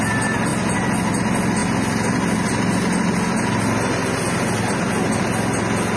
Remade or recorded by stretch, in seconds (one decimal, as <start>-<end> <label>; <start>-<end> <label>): 0.0-6.0 recorded